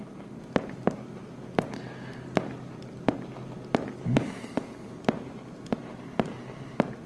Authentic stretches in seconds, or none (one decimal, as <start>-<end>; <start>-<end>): 0.0-7.1